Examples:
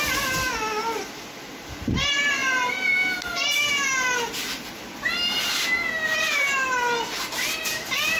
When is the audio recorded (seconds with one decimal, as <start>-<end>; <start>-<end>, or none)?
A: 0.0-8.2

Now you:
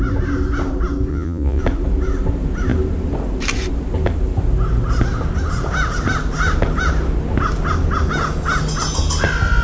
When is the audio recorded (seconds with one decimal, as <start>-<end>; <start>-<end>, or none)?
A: 0.0-1.1; 1.6-9.6

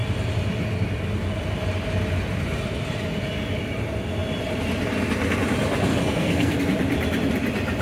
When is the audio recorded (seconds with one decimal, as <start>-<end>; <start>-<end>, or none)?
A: 0.0-5.9; 6.6-7.8